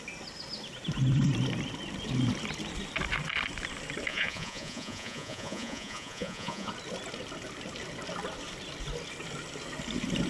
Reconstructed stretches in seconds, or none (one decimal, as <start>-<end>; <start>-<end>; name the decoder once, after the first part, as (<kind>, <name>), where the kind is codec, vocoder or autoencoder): 4.1-6.7 (vocoder, Vocos)